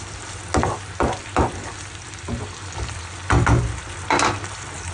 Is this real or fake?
real